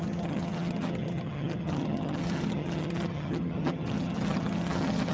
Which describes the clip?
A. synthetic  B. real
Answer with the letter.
A